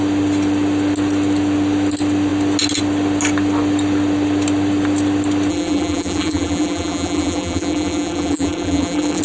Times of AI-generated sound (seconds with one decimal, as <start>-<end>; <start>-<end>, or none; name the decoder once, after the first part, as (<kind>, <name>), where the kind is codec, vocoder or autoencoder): 5.5-9.2 (vocoder, BigVGAN v2)